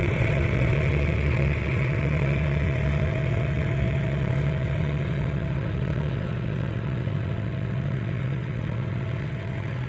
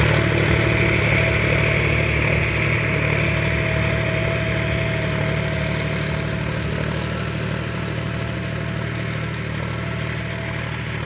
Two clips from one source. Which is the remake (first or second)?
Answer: first